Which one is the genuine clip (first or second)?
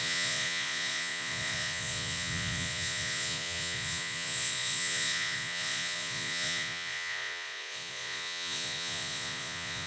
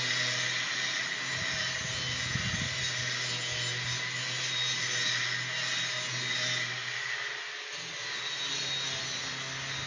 second